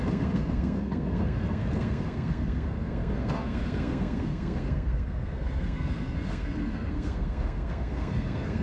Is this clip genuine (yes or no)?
no